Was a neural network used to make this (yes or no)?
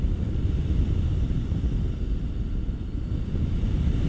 no